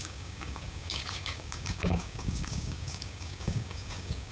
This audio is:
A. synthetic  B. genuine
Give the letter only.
A